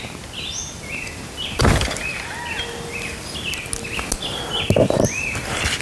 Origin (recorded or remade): recorded